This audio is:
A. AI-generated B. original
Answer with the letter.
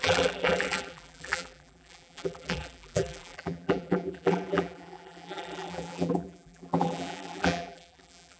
A